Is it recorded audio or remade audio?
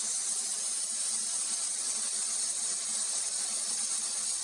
recorded